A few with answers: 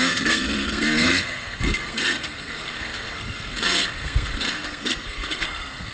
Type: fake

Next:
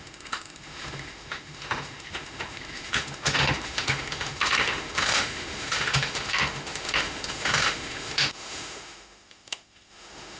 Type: fake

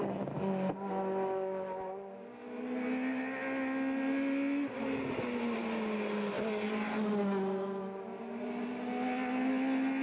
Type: real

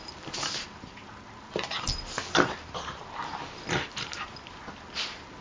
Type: real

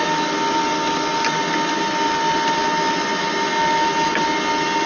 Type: real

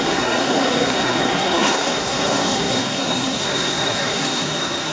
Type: fake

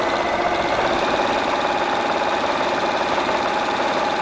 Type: real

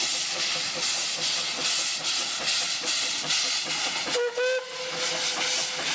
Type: real